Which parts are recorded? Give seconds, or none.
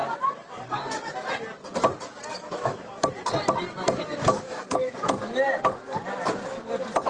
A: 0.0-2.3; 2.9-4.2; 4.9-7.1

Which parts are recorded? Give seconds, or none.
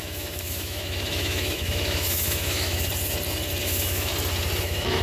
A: 2.9-3.6; 4.1-4.6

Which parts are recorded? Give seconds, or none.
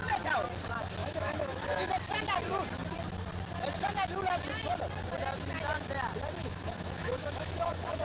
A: 0.0-1.0; 1.9-6.4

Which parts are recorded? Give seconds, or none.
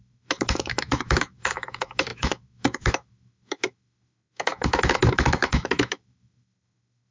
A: none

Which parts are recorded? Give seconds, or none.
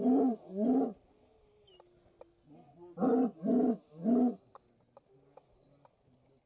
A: 0.0-6.5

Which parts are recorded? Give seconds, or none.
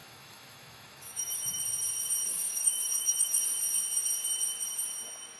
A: 1.6-2.3; 3.4-5.4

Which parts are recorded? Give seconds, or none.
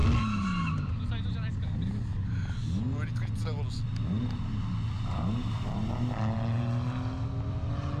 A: 0.0-8.0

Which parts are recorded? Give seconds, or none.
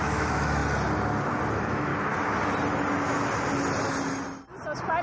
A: 0.6-1.5; 1.9-5.0